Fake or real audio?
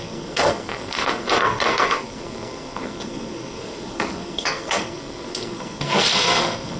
fake